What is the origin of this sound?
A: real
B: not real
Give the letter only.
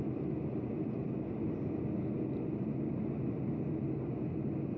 A